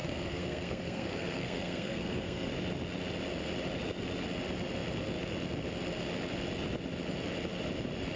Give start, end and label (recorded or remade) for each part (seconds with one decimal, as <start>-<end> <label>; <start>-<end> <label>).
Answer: 0.0-2.5 remade; 2.5-8.2 recorded